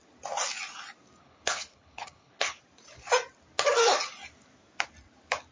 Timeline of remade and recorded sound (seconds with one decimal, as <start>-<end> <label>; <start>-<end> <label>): 0.0-1.2 recorded; 1.2-2.6 remade; 2.6-5.5 recorded